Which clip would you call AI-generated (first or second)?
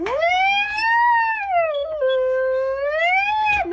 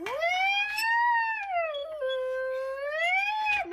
first